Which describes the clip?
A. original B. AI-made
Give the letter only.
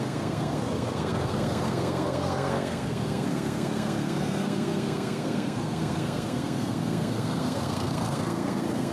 B